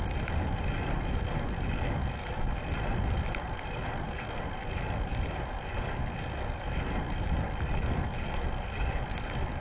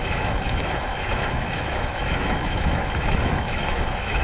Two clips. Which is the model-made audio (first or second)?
second